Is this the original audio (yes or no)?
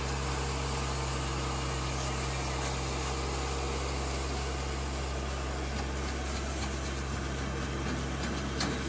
yes